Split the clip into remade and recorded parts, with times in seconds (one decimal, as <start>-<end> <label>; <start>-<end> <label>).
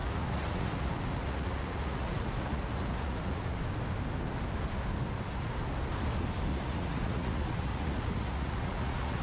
0.0-3.6 remade; 3.6-6.5 recorded; 6.5-9.2 remade